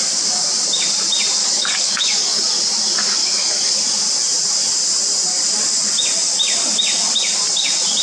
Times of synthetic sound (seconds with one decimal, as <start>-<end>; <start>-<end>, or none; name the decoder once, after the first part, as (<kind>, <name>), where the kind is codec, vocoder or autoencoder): 1.4-2.4 (codec, DAC); 3.2-3.7